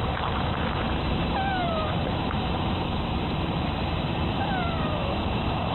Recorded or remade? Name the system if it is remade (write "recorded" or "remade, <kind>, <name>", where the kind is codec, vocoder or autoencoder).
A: remade, vocoder, BigVGAN v2